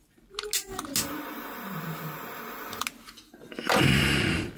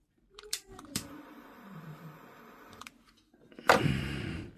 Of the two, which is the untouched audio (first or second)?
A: first